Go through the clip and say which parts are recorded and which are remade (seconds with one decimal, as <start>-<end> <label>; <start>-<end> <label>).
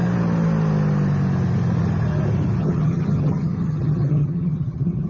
0.0-2.6 recorded; 2.6-5.1 remade